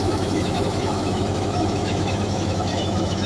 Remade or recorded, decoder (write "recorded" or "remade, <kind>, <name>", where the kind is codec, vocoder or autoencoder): remade, autoencoder, DAC-VAE